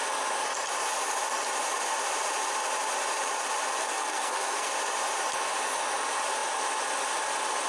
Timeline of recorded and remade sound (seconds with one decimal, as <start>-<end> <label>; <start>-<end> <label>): 0.0-3.8 recorded; 3.8-4.7 remade; 4.7-7.7 recorded